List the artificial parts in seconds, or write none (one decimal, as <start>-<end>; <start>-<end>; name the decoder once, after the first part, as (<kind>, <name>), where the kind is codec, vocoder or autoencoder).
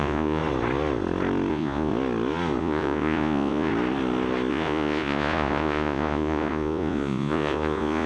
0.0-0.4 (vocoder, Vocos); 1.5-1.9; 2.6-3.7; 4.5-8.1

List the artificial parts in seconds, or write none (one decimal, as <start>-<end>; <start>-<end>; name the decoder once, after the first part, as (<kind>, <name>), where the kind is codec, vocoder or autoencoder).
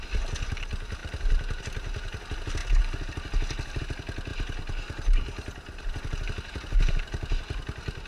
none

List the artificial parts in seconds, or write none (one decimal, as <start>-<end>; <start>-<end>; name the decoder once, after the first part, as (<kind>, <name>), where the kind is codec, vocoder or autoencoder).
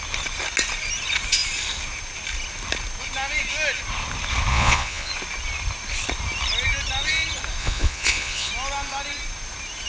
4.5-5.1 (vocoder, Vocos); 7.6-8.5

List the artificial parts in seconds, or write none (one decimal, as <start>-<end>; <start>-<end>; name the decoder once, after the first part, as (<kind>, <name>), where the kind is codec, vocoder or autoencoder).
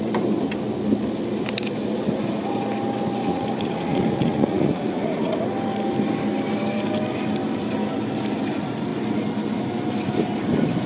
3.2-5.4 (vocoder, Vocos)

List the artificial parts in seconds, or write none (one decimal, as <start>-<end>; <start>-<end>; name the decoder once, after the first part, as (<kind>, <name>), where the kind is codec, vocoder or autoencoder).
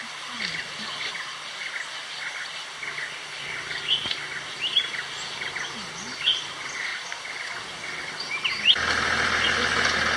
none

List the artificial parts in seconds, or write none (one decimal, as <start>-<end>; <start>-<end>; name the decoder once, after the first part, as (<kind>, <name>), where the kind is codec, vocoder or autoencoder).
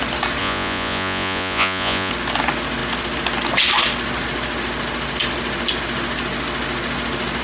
0.4-2.1 (vocoder, Vocos)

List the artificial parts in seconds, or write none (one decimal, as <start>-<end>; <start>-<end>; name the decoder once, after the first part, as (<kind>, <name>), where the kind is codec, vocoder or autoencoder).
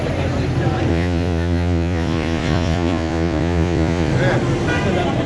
0.9-4.1 (vocoder, Vocos)